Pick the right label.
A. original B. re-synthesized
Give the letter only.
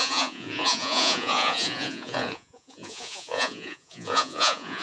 B